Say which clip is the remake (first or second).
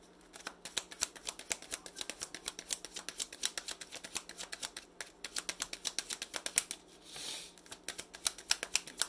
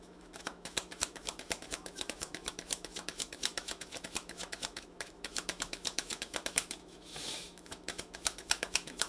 second